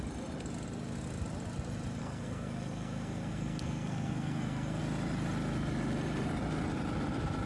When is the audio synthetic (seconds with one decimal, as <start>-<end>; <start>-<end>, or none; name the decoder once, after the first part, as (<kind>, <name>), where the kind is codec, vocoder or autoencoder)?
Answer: 2.0-4.8 (codec, SNAC)